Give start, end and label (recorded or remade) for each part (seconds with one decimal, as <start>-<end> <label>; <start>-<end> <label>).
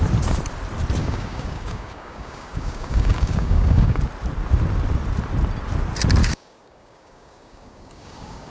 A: 0.0-1.0 recorded; 1.0-4.0 remade; 4.0-6.2 recorded; 6.2-8.5 remade